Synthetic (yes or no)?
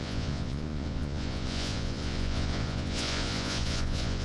yes